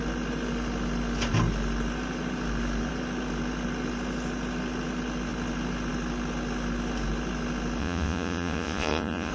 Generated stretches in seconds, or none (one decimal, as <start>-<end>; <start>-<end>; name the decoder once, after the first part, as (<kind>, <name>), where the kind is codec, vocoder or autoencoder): 7.8-9.3 (vocoder, Vocos)